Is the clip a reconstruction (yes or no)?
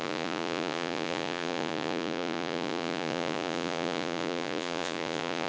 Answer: yes